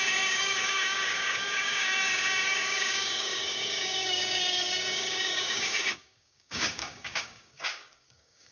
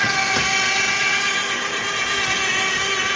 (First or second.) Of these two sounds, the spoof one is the first